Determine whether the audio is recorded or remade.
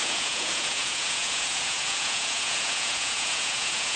remade